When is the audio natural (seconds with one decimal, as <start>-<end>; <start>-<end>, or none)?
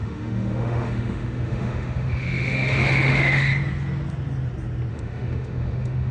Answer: 3.5-4.9